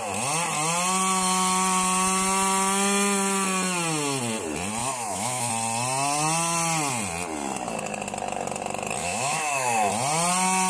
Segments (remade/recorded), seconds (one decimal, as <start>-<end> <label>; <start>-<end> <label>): 0.0-4.8 recorded; 4.8-5.5 remade; 5.5-9.0 recorded; 9.0-9.9 remade; 9.9-10.7 recorded